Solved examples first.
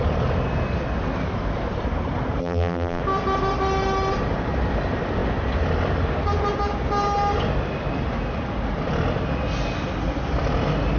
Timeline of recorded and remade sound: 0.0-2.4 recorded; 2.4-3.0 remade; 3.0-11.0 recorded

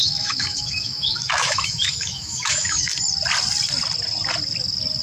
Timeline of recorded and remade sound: 0.0-3.0 remade; 3.0-5.0 recorded

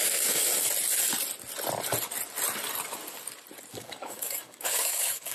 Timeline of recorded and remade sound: 0.0-0.5 remade; 0.5-3.7 recorded; 3.7-5.3 remade

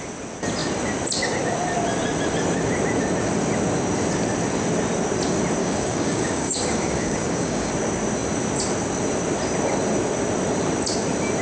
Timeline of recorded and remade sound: 0.0-5.6 recorded; 5.6-7.7 remade; 7.7-11.4 recorded

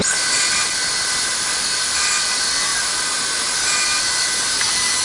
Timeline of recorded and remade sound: 0.0-5.0 recorded

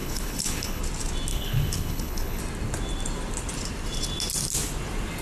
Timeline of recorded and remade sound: 0.0-0.8 remade; 0.8-1.3 recorded; 1.3-2.4 remade; 2.4-5.2 recorded

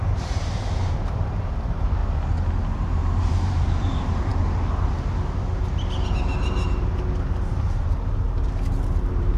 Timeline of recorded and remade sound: 0.0-2.0 remade; 2.0-2.9 recorded; 2.9-4.3 remade; 4.3-7.4 recorded; 7.4-9.4 remade